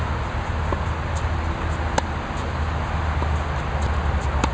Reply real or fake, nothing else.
real